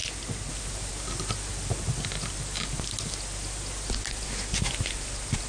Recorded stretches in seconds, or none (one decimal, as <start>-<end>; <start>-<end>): 0.0-5.5